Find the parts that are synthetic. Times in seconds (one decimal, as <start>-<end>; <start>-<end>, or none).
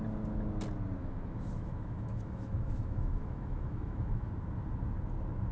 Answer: 1.0-4.3